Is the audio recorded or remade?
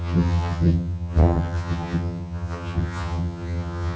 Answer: remade